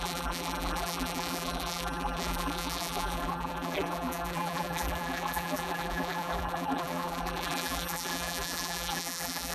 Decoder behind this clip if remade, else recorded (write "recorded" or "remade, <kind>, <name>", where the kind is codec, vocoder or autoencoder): remade, vocoder, BigVGAN v2